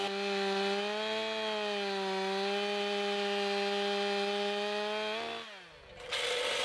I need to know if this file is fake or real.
real